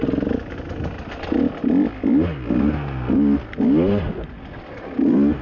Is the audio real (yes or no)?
yes